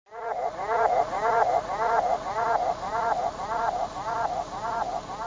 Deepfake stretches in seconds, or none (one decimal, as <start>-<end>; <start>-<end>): none